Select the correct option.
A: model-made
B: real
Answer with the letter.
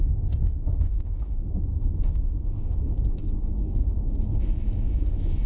A